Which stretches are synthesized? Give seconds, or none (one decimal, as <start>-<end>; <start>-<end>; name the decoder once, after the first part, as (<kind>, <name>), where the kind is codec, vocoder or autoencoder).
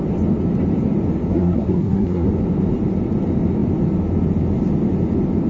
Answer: 1.3-2.3 (codec, SNAC)